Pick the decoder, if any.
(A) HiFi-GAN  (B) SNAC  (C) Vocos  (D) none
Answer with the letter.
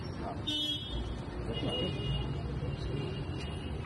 D